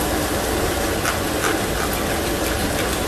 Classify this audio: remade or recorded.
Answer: recorded